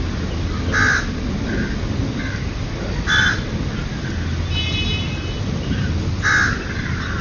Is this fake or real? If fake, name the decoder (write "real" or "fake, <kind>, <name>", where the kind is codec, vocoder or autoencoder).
real